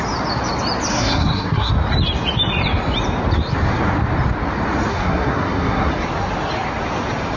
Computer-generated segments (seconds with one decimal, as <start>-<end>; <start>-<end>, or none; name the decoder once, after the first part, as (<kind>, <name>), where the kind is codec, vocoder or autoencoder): 0.9-1.7 (codec, SNAC); 4.9-5.9